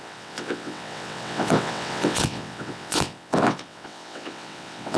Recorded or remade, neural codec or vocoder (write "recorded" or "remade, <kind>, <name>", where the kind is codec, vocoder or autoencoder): remade, vocoder, WaveNeXt